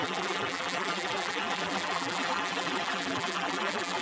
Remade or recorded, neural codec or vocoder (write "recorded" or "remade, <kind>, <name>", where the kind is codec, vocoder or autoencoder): remade, vocoder, BigVGAN v2